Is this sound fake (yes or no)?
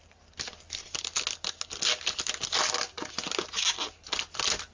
no